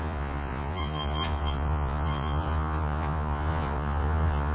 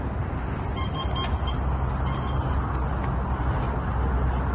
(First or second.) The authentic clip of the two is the second